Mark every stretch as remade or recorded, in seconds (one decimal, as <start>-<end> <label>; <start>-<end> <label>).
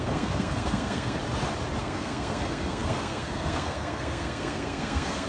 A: 0.0-1.2 remade; 1.2-1.8 recorded; 1.8-5.3 remade